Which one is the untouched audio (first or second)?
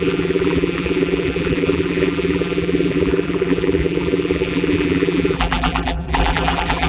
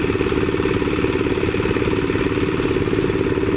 second